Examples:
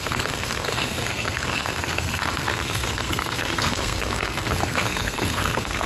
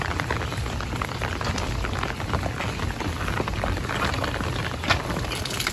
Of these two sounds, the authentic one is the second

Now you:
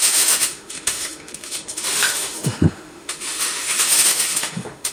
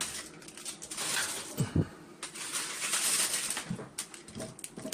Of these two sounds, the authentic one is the second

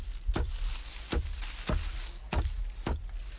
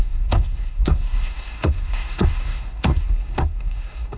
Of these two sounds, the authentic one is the first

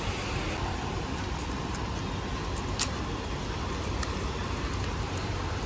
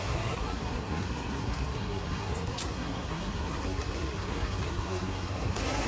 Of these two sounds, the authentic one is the first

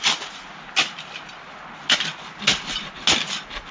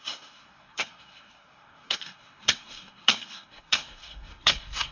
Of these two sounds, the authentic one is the first